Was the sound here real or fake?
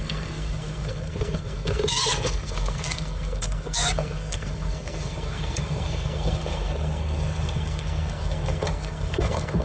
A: fake